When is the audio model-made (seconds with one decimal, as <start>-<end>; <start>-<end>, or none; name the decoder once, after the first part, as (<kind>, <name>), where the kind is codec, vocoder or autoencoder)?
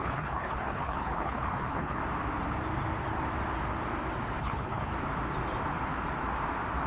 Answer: 0.0-2.0 (codec, HILCodec); 4.4-4.9